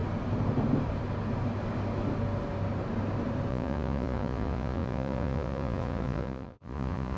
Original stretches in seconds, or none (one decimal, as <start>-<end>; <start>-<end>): 0.0-3.5